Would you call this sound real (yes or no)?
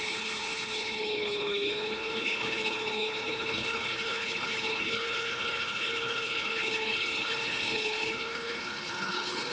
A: no